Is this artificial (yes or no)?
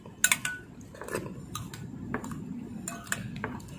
no